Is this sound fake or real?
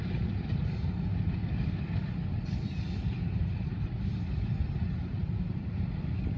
real